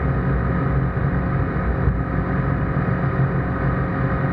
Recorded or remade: recorded